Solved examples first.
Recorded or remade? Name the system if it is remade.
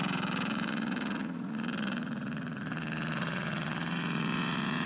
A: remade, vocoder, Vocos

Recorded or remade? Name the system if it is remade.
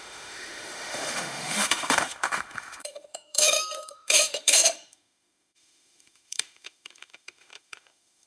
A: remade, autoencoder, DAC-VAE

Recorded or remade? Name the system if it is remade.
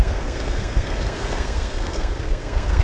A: remade, codec, SNAC